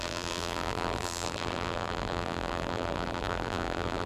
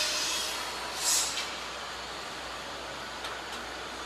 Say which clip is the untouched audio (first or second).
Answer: second